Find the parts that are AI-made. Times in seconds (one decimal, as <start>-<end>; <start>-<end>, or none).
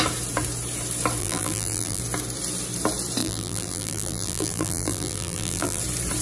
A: 1.2-2.0; 3.2-5.8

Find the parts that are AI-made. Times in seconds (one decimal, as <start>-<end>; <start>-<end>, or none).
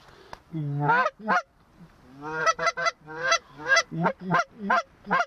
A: none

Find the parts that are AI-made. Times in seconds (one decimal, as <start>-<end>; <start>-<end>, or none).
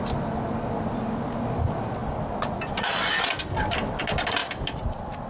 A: 4.4-5.3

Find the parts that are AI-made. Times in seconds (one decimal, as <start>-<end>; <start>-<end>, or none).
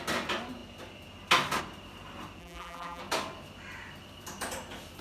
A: 2.4-3.0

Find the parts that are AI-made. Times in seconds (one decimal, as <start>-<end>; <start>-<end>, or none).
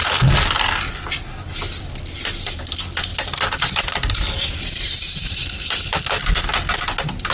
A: 3.1-6.1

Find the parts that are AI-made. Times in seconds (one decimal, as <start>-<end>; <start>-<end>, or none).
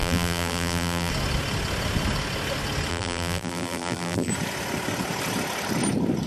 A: 0.0-1.1; 2.9-4.3